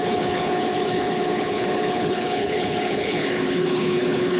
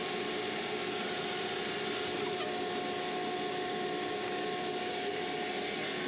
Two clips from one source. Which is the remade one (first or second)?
first